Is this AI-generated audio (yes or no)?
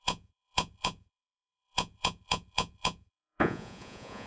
yes